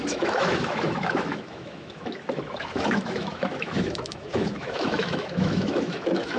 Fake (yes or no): yes